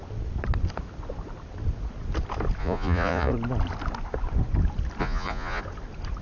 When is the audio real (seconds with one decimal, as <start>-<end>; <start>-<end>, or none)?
0.0-2.6; 3.3-5.0; 5.6-6.2